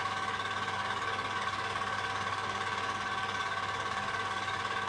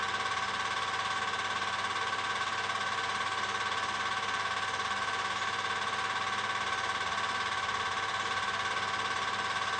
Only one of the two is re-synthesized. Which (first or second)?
first